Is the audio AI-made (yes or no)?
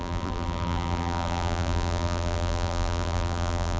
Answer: yes